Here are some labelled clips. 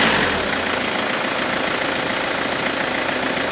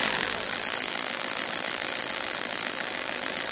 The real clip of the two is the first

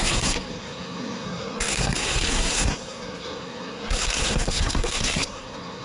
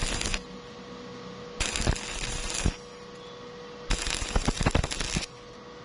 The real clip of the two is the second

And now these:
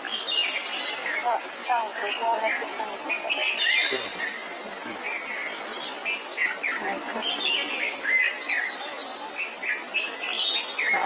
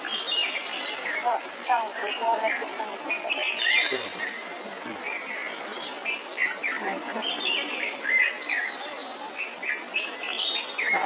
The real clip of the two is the first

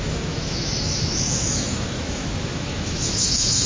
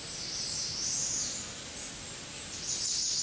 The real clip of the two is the second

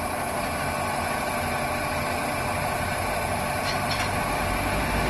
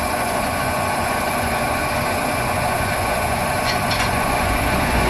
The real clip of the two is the first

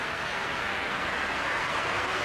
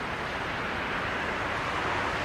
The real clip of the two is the second